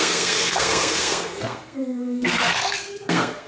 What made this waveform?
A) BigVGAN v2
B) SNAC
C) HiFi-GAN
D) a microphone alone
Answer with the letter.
B